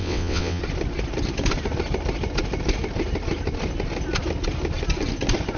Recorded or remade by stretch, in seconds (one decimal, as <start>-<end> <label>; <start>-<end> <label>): 0.0-0.6 remade; 0.6-5.6 recorded